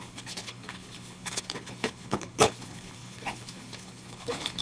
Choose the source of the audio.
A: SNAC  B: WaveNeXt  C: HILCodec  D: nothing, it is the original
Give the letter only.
C